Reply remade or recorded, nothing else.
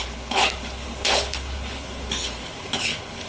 remade